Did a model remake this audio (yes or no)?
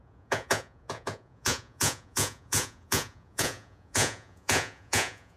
yes